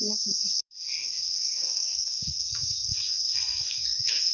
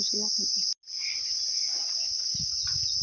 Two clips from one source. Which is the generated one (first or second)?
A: first